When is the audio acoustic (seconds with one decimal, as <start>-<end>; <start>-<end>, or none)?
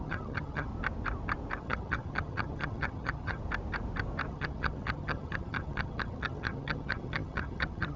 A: 0.7-1.6; 3.4-4.3